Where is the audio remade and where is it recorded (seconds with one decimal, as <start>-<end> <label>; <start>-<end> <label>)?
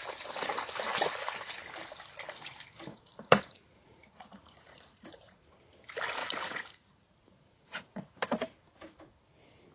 0.0-2.9 recorded; 2.9-5.6 remade; 5.6-6.2 recorded; 6.2-9.2 remade; 9.2-9.7 recorded